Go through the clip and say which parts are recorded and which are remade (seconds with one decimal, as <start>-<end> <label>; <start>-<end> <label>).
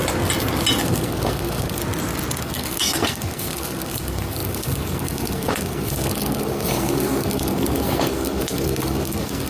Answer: 0.0-0.8 recorded; 0.8-1.8 remade; 1.8-2.4 recorded; 2.4-9.5 remade